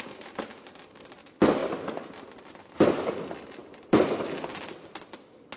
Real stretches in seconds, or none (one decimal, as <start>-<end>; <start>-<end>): 0.0-5.6